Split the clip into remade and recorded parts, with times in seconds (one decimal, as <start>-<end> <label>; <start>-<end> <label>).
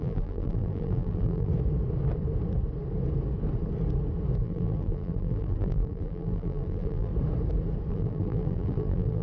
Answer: 0.0-1.5 remade; 1.5-4.4 recorded; 4.4-7.1 remade; 7.1-7.9 recorded; 7.9-9.2 remade